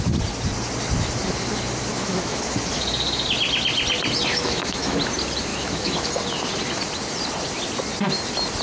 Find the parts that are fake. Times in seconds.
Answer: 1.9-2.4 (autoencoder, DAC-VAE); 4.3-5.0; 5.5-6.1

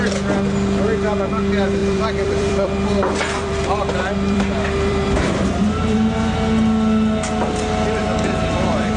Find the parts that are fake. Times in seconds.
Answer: 1.8-6.1 (vocoder, BigVGAN v2); 8.0-9.0

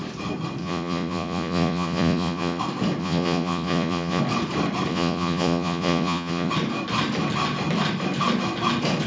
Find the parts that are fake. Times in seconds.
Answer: 0.6-2.6 (vocoder, Vocos); 3.0-4.2; 4.9-6.5

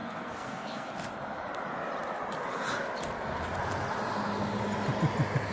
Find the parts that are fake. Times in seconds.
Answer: 0.0-0.9 (codec, SNAC)

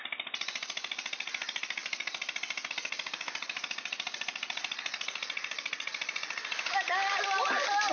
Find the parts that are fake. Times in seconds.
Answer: none

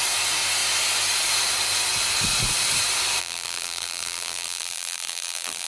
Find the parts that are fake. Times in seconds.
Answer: 3.2-5.7 (vocoder, BigVGAN v2)